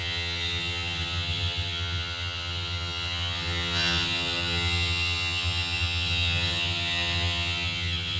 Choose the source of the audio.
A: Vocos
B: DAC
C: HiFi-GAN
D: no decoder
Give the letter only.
C